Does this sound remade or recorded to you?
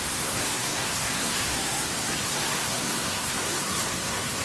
remade